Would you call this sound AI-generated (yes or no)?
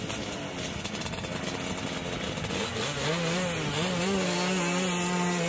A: no